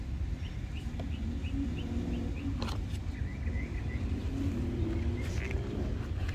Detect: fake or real real